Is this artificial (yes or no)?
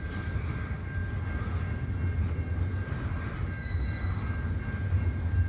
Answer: no